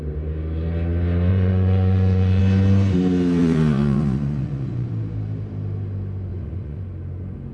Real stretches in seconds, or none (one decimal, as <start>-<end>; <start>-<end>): 0.0-1.3; 2.4-3.4; 4.9-6.3; 6.8-7.5